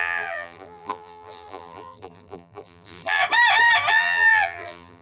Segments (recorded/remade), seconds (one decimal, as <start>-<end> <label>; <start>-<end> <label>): 0.0-3.2 remade; 3.2-3.9 recorded; 3.9-5.0 remade